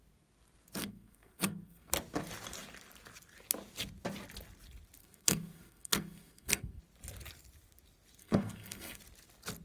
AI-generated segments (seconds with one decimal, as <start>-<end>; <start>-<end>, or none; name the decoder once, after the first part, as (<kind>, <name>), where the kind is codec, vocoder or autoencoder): 0.8-1.9 (codec, SNAC); 5.0-6.8; 8.2-9.0